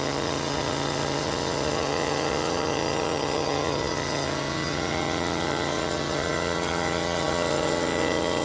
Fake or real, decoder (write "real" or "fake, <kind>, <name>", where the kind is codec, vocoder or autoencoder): fake, vocoder, HiFi-GAN